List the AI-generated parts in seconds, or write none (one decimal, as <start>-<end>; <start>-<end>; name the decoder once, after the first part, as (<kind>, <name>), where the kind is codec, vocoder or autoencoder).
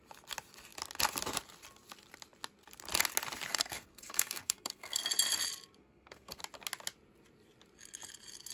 3.5-5.0 (codec, SNAC); 5.8-6.4